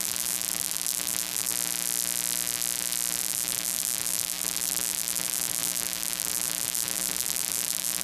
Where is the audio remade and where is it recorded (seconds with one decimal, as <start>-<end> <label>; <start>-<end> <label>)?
0.0-1.5 remade; 1.5-3.2 recorded; 3.2-8.0 remade